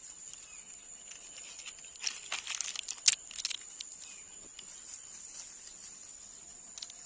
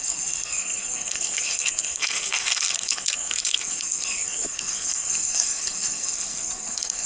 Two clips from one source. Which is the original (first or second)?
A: first